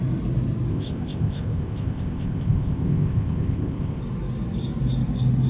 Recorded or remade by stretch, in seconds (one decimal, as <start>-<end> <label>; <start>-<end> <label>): 0.0-0.7 recorded; 0.7-4.0 remade; 4.0-5.5 recorded